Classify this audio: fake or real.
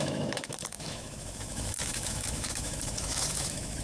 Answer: fake